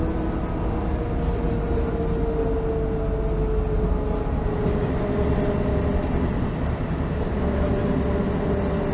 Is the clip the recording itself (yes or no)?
yes